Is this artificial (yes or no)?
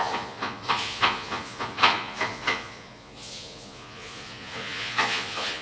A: yes